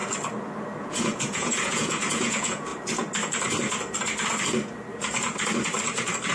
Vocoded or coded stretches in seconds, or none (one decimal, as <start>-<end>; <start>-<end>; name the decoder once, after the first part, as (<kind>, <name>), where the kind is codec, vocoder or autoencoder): 0.8-2.7 (vocoder, Vocos)